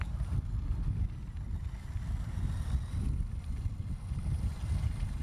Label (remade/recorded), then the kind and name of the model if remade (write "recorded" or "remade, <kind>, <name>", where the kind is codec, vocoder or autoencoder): recorded